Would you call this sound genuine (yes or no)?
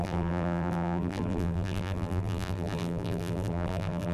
no